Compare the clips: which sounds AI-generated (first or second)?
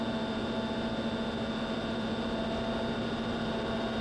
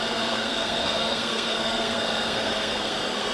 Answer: second